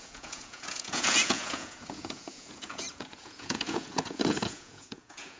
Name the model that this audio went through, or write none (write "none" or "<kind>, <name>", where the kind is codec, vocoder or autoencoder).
vocoder, Vocos